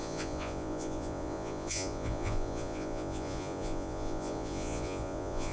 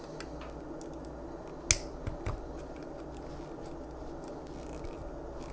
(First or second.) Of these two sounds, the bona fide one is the second